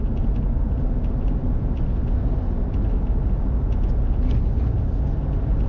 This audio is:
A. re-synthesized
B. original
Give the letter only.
B